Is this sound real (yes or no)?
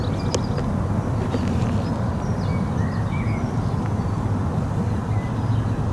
yes